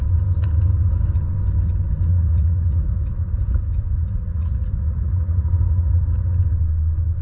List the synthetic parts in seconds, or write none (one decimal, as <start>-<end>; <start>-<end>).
2.1-6.4